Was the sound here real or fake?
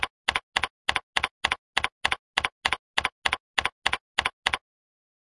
real